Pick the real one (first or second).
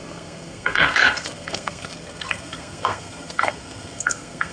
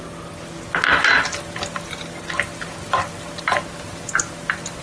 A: second